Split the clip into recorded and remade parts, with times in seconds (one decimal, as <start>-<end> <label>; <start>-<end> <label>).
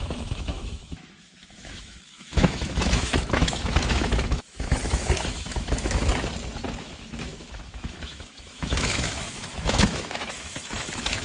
0.0-6.1 remade; 6.1-6.8 recorded; 6.8-11.2 remade